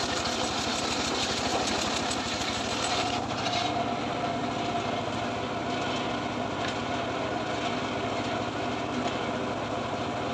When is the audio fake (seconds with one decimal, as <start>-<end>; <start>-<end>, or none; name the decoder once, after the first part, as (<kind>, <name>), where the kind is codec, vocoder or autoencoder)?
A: none